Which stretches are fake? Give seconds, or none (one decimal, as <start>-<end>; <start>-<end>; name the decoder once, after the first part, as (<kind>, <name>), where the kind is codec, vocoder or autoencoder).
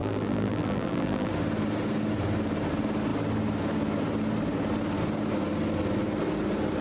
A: 0.0-1.3 (vocoder, BigVGAN v2)